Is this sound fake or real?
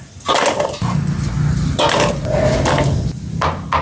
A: real